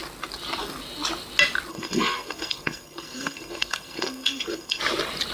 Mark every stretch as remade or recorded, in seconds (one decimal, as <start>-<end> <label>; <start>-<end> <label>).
0.0-1.7 recorded; 1.7-4.8 remade; 4.8-5.3 recorded